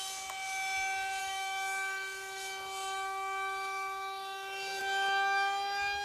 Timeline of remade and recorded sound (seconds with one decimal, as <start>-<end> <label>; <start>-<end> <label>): 0.0-1.2 recorded; 1.2-4.8 remade; 4.8-6.0 recorded